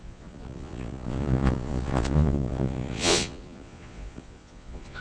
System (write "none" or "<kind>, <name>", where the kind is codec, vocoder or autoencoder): vocoder, Vocos